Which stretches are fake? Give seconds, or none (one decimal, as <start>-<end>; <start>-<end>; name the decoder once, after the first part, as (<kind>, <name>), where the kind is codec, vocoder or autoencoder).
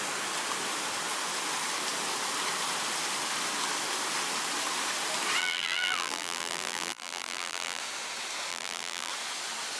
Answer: 5.4-7.8 (vocoder, BigVGAN v2); 8.5-9.1